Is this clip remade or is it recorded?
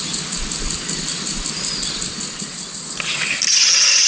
recorded